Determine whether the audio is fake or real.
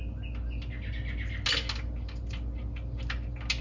real